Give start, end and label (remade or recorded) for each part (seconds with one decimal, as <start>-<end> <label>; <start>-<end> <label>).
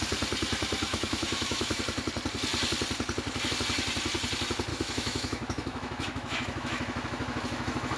0.0-0.9 recorded; 0.9-1.8 remade; 1.8-4.7 recorded; 4.7-8.0 remade